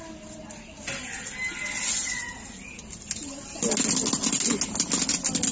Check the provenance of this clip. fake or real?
real